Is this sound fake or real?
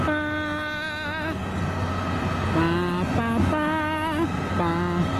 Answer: real